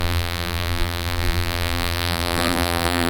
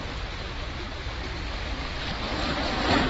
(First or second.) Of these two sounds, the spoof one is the first